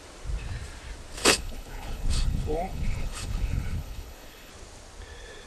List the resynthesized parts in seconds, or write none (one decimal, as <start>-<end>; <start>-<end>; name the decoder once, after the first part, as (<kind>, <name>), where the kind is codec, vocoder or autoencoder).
1.2-4.5 (codec, HILCodec)